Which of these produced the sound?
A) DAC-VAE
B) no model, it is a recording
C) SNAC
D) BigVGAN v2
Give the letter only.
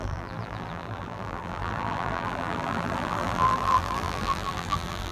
D